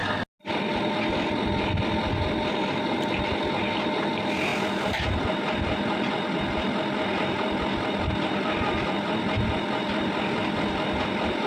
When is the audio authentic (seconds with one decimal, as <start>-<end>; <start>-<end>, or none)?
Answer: 0.0-11.5